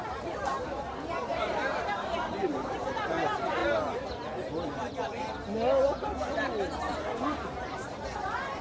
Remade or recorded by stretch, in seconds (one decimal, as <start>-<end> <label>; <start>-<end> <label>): 0.0-3.6 remade; 3.6-7.0 recorded; 7.0-8.6 remade